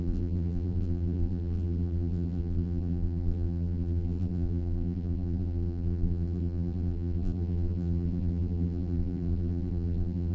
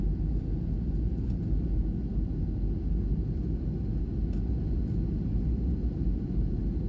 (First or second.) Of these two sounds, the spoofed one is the first